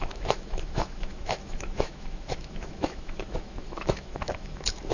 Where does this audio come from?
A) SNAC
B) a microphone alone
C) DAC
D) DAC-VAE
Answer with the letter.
D